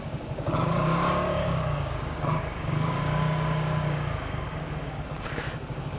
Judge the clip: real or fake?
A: fake